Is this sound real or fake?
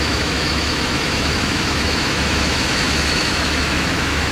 fake